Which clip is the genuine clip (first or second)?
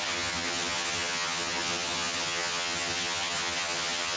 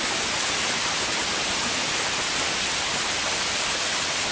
second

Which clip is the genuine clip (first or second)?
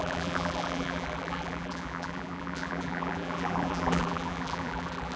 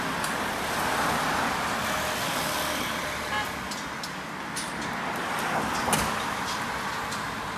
second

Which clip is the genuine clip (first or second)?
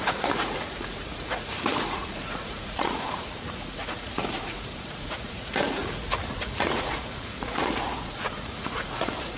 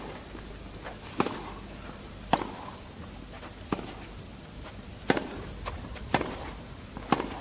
second